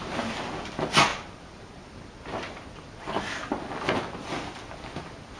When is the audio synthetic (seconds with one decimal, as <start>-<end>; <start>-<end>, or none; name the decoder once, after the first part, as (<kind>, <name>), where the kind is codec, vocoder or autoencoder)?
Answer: none